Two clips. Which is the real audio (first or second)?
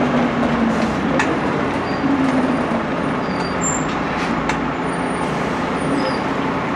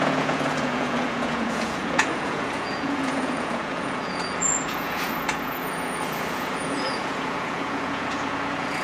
first